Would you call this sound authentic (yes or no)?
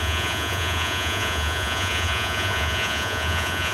no